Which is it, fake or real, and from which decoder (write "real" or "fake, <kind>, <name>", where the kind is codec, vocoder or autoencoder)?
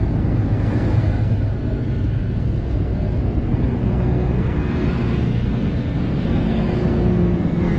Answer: fake, codec, SNAC